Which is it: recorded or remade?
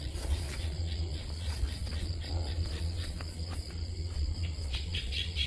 remade